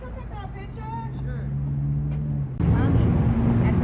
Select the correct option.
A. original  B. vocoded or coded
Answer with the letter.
A